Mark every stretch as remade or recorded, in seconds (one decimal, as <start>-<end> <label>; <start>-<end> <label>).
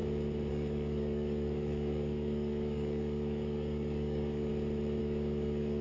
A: 0.0-0.5 recorded; 0.5-4.5 remade; 4.5-5.0 recorded; 5.0-5.8 remade